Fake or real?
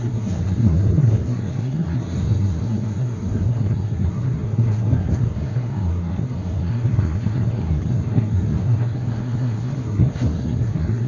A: fake